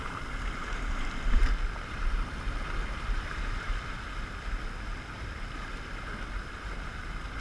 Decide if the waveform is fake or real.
real